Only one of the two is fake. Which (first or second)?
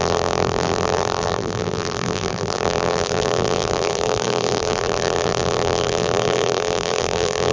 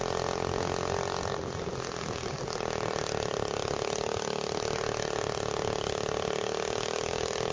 first